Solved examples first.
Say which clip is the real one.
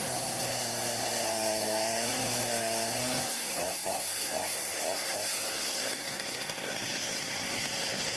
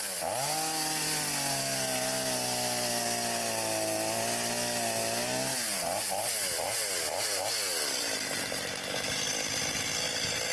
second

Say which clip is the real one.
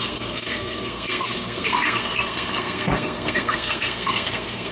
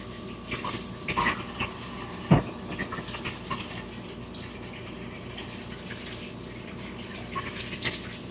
second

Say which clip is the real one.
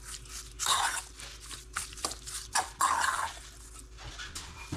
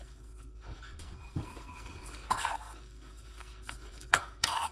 first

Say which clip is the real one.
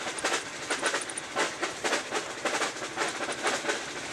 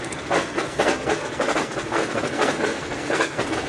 first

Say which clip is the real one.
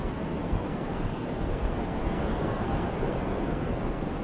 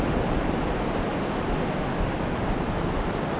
second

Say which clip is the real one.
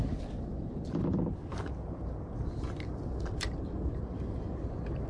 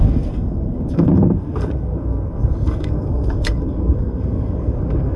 first